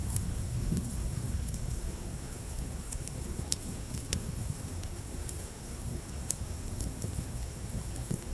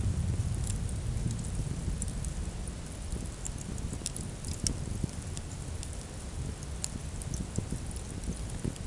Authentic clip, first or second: second